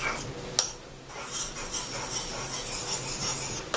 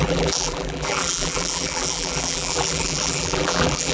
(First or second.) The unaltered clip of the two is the first